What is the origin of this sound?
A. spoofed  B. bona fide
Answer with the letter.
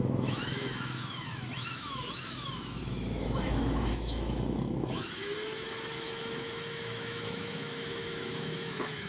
A